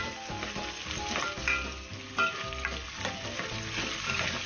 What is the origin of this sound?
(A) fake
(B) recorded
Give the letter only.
B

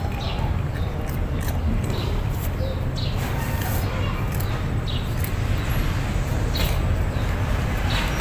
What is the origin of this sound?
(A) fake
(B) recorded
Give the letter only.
B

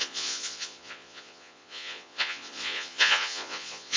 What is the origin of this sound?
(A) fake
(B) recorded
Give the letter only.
A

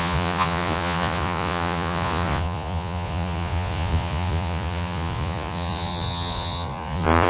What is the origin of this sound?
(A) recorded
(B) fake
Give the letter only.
B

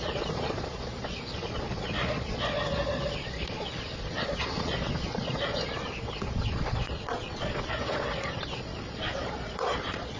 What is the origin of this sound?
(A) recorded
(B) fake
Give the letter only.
B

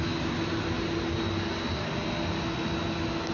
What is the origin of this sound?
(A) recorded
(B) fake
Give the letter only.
A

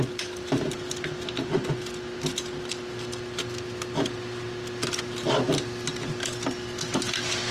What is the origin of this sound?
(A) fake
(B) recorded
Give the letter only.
B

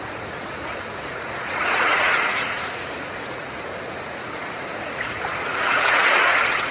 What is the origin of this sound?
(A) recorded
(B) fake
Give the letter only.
B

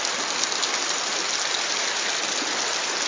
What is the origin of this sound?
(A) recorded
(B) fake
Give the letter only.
A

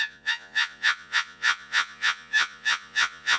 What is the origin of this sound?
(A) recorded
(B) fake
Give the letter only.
B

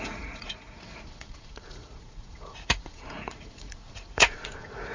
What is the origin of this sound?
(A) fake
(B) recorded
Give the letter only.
A